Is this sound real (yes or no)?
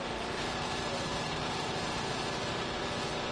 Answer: no